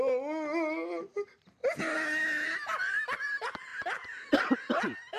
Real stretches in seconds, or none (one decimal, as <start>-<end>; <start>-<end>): 0.0-5.2